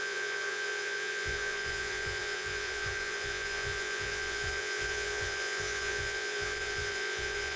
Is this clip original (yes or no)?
no